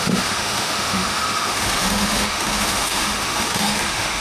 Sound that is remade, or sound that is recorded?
remade